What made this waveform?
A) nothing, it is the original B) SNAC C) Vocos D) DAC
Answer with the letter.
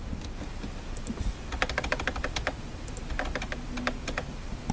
A